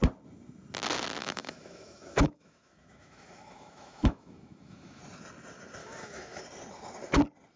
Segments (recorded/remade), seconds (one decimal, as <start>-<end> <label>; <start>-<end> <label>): 0.0-1.2 recorded; 1.2-5.0 remade; 5.0-5.8 recorded; 5.8-6.4 remade; 6.4-7.6 recorded